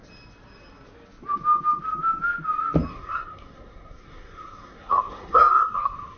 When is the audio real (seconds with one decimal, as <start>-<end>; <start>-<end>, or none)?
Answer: 0.0-2.9